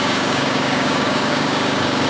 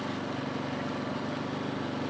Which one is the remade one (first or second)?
first